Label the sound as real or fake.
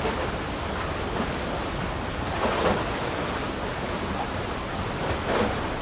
real